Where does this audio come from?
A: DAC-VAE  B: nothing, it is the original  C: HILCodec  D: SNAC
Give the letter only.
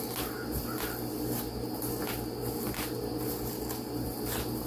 B